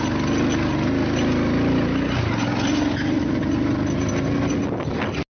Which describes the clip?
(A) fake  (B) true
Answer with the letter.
B